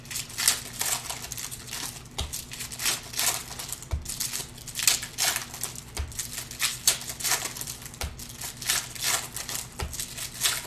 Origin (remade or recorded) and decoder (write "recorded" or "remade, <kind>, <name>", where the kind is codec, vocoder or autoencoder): recorded